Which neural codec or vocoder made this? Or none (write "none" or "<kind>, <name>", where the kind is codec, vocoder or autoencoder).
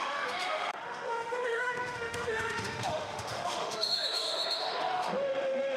autoencoder, DAC-VAE